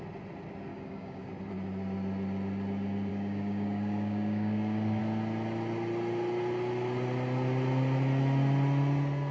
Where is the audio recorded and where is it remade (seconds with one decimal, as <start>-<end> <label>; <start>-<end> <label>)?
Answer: 0.0-0.7 recorded; 0.7-1.3 remade; 1.3-3.1 recorded; 3.1-5.0 remade; 5.0-9.3 recorded